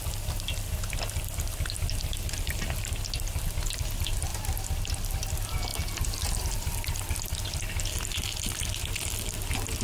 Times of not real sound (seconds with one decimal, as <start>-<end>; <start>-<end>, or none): none

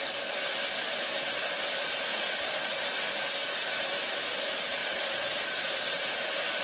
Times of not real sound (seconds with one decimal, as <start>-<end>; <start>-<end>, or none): 2.1-2.6; 4.8-5.9

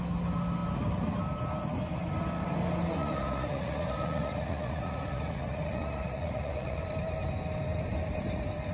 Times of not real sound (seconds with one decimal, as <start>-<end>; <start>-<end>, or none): 3.0-6.8

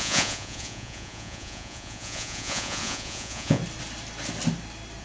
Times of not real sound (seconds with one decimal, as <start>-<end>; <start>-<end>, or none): 0.0-3.6

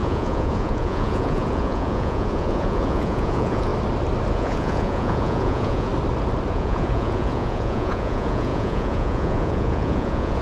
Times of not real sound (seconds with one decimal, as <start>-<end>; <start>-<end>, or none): 0.0-3.7; 4.3-5.9; 6.5-10.4